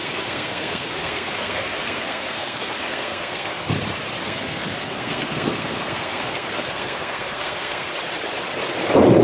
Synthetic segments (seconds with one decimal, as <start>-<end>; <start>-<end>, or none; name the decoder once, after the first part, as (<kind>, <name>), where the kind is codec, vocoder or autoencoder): 0.0-3.6 (codec, SNAC); 4.2-7.9